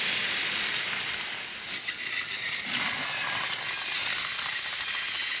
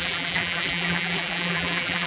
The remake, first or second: second